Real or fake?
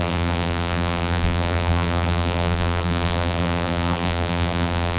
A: fake